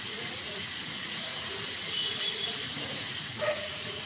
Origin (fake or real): fake